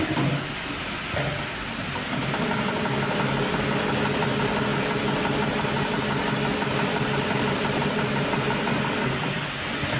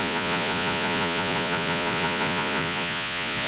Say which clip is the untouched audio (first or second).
first